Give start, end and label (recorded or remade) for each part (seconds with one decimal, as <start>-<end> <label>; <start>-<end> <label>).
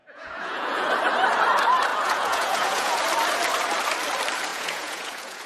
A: 0.0-0.9 remade; 0.9-1.9 recorded; 1.9-3.0 remade; 3.0-4.5 recorded; 4.5-5.5 remade